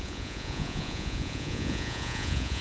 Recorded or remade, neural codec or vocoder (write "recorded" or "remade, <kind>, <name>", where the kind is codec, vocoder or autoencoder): remade, vocoder, Vocos